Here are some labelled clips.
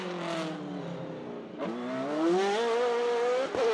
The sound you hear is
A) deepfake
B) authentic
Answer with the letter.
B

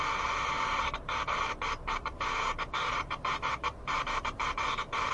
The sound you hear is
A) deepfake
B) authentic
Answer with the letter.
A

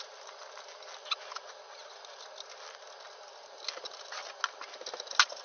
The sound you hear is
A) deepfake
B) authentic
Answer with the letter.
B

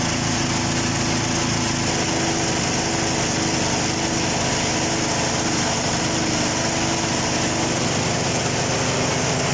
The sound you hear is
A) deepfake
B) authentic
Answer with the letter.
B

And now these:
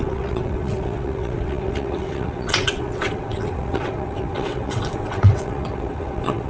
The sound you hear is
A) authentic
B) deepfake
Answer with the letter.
B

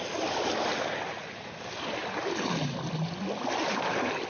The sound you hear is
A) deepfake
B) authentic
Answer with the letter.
B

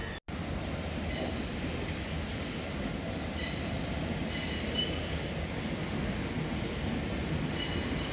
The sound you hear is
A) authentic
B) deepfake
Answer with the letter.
A